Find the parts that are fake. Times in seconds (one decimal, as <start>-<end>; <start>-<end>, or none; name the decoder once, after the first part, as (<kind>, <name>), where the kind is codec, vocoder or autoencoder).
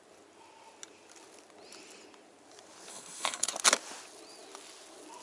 2.9-3.5 (codec, SNAC)